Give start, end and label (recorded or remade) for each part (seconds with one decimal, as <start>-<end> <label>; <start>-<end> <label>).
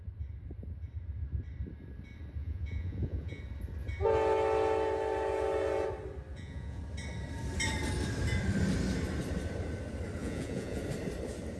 0.0-2.4 recorded; 2.4-3.4 remade; 3.4-6.3 recorded; 6.3-6.8 remade; 6.8-10.2 recorded; 10.2-10.8 remade; 10.8-11.6 recorded